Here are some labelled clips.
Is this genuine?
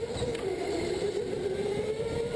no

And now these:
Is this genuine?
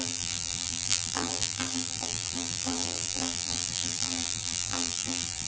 no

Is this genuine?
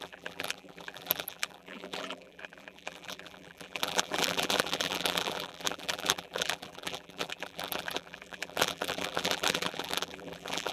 no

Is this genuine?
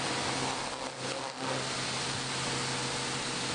yes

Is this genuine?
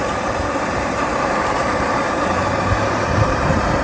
no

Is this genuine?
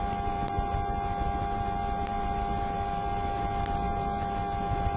yes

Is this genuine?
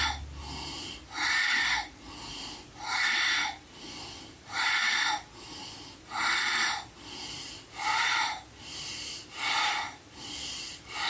no